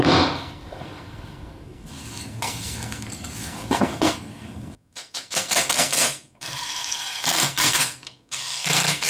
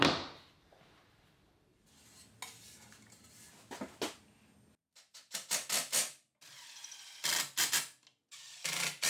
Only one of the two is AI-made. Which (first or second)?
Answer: first